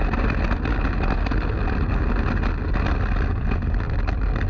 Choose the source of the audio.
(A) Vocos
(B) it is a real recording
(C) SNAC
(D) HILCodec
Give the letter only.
B